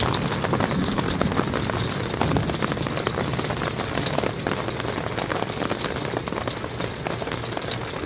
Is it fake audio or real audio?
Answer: real